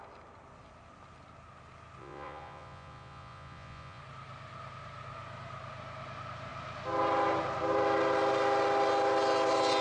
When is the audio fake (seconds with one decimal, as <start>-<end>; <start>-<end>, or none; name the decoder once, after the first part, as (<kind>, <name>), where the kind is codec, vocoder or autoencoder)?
2.0-4.0 (vocoder, Vocos)